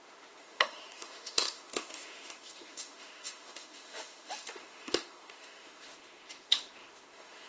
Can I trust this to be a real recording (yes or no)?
no